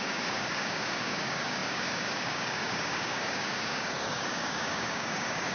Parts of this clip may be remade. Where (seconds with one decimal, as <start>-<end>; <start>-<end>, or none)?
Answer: 0.0-5.5